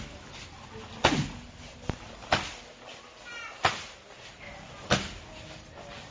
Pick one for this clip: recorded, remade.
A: recorded